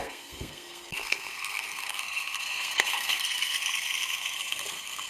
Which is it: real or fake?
fake